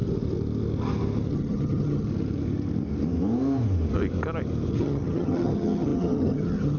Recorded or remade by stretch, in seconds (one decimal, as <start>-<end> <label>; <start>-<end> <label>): 0.0-1.3 recorded; 1.3-2.1 remade; 2.1-4.7 recorded; 4.7-6.8 remade